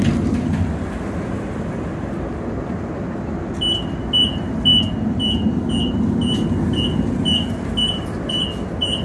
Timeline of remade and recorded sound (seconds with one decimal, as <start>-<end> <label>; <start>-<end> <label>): 0.0-9.0 recorded